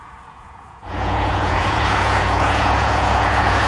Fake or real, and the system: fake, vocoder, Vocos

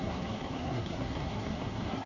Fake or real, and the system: fake, codec, SNAC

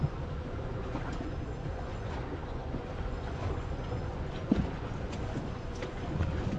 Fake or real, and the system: fake, vocoder, Vocos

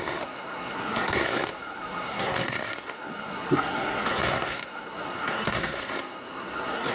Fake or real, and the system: fake, codec, SNAC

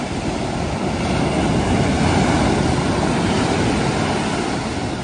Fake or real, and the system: real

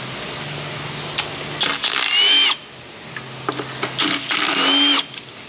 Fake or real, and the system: real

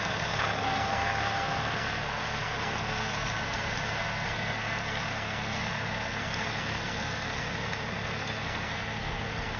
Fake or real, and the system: fake, codec, SNAC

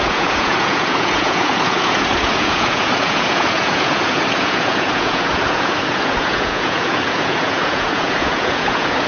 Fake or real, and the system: fake, vocoder, Vocos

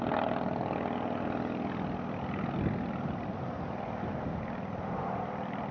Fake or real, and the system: real